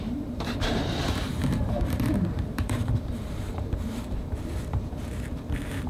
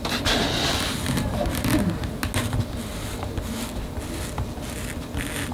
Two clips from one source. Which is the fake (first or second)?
first